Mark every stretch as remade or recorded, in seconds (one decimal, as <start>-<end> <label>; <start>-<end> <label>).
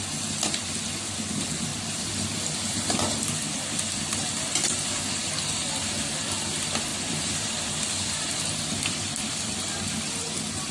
0.0-1.7 recorded; 1.7-4.0 remade; 4.0-6.9 recorded; 6.9-9.8 remade; 9.8-10.7 recorded